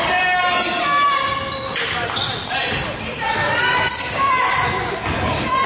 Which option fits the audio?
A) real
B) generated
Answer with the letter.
A